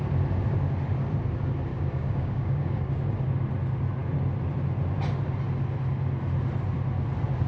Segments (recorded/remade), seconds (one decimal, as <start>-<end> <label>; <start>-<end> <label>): 0.0-1.7 recorded; 1.7-2.9 remade; 2.9-7.5 recorded